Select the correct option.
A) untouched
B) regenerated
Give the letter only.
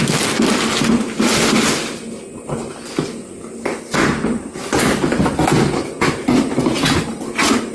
A